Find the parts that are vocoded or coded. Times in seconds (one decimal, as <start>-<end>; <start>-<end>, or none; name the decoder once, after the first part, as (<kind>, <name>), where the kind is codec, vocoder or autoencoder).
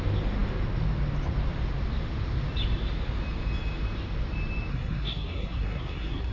4.7-6.3 (codec, SNAC)